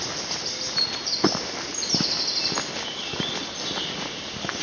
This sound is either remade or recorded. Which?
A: recorded